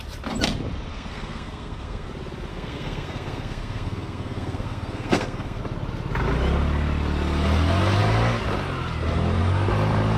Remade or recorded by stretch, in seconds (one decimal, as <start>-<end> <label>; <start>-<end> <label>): 0.0-0.9 recorded; 0.9-2.1 remade; 2.1-2.5 recorded; 2.5-5.6 remade; 5.6-10.2 recorded